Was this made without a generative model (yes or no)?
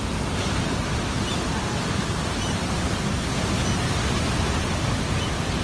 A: yes